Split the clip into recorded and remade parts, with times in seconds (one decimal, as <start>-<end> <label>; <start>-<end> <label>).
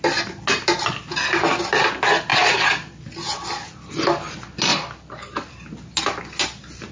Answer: 0.0-2.3 recorded; 2.3-3.9 remade; 3.9-4.7 recorded; 4.7-5.5 remade; 5.5-6.9 recorded